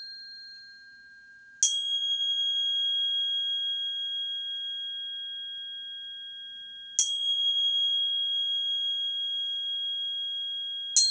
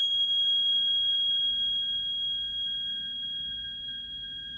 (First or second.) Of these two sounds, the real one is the first